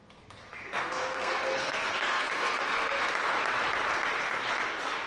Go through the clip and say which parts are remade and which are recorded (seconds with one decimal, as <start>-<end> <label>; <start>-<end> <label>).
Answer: 0.0-3.1 remade; 3.1-5.1 recorded